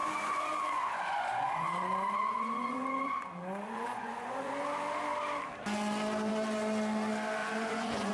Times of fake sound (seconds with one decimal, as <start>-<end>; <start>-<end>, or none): 0.0-4.5; 7.4-8.1